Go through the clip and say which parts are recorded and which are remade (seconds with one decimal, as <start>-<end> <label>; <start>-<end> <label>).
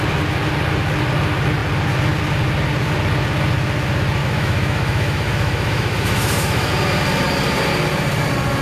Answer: 0.0-4.2 recorded; 4.2-6.7 remade; 6.7-8.6 recorded